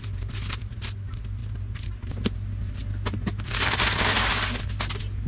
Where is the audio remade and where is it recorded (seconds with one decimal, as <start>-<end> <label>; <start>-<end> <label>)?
0.0-5.3 recorded